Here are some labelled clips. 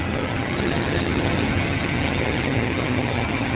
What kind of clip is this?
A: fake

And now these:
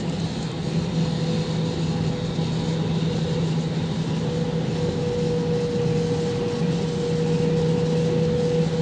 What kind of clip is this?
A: real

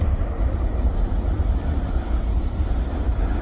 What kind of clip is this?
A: real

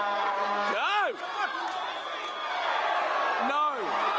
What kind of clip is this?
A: real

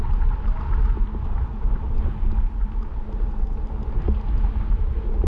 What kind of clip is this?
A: real